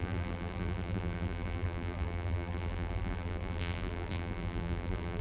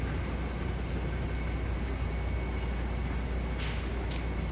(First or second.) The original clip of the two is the second